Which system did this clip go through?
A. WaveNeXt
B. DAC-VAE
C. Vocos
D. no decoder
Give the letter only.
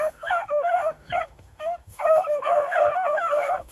B